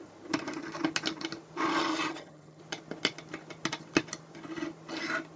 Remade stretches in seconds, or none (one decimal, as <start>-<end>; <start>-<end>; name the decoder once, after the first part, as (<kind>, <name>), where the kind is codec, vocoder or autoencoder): 1.9-2.6 (vocoder, HiFi-GAN)